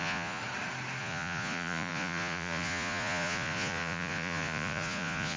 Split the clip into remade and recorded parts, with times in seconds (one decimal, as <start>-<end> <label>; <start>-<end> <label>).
0.0-0.4 remade; 0.4-1.0 recorded; 1.0-5.4 remade